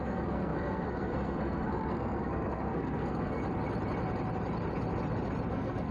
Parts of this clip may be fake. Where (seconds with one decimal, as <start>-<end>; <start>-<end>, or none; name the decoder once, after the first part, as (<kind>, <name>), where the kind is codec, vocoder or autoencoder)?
0.0-3.4 (codec, SNAC); 5.5-5.9